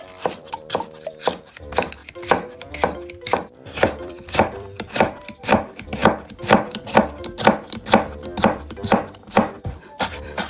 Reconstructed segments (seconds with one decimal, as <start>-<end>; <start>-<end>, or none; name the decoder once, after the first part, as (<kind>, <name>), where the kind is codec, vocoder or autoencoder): 0.0-2.0 (vocoder, BigVGAN v2); 3.3-6.0; 8.2-10.5